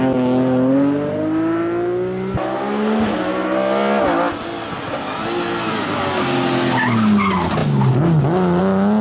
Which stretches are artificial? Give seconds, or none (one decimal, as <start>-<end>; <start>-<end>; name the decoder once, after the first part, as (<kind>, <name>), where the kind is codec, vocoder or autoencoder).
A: none